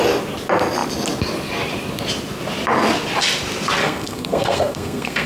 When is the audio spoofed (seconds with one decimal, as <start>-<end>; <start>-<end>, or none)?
3.8-5.3